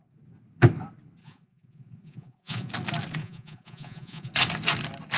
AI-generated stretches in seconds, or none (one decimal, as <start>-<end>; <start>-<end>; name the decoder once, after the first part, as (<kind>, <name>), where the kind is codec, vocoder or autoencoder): 1.2-2.7 (vocoder, Vocos); 3.2-4.3